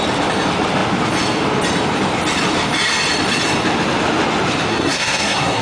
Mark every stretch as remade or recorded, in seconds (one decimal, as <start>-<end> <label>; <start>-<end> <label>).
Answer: 0.0-4.7 recorded; 4.7-5.6 remade